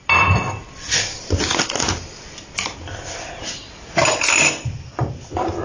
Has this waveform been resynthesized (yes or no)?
no